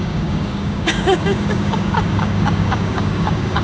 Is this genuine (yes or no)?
no